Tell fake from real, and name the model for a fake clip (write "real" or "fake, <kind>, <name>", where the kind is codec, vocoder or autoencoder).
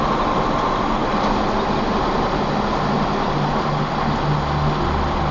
real